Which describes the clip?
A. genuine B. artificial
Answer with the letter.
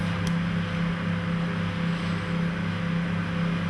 A